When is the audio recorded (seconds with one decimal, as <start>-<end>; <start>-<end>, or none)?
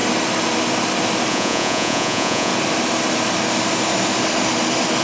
0.0-1.3; 2.5-5.0